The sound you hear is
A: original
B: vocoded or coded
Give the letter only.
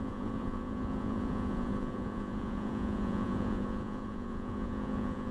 B